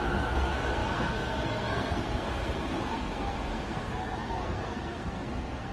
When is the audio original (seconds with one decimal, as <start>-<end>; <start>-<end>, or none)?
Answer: none